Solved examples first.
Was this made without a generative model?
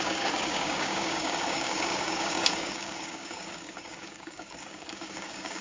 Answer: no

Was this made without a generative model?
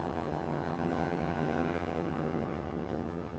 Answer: no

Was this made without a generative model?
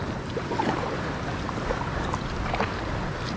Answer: yes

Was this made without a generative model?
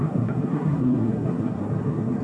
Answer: no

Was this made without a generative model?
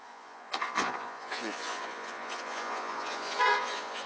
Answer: no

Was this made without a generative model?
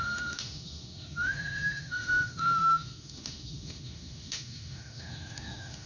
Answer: no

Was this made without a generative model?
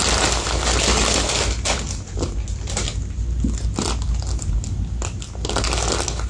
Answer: yes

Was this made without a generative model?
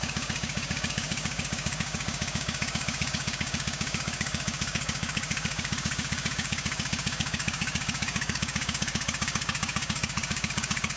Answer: no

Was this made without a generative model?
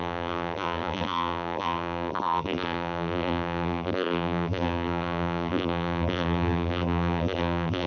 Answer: no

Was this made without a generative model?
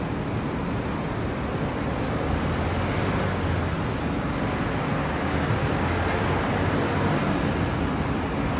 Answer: yes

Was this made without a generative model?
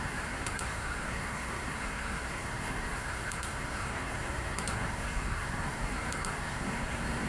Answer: no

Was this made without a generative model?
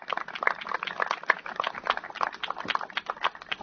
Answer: yes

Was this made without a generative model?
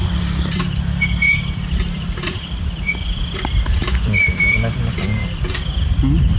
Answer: no